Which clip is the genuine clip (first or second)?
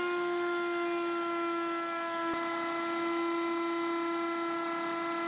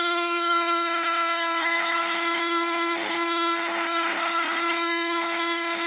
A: first